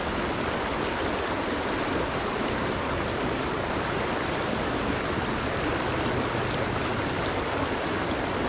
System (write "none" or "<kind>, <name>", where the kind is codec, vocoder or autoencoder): none